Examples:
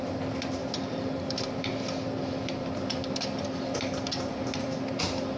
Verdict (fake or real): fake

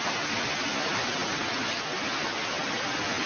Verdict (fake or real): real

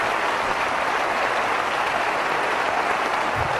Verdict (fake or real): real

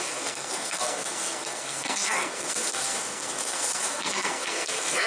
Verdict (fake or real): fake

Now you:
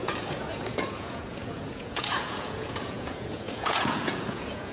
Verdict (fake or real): fake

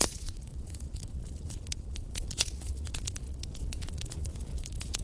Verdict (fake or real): fake